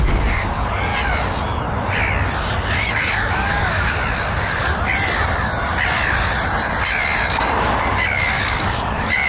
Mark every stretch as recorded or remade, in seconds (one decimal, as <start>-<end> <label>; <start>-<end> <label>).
0.0-0.9 remade; 0.9-3.1 recorded; 3.1-4.0 remade; 4.0-7.4 recorded; 7.4-9.3 remade